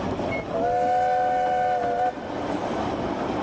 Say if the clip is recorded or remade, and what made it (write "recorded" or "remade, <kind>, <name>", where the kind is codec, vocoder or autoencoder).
recorded